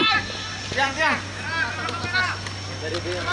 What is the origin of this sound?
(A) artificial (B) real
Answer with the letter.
B